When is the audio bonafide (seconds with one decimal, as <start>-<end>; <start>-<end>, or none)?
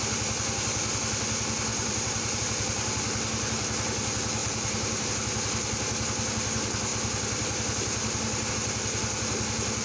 0.0-1.7; 2.4-4.4; 5.1-9.8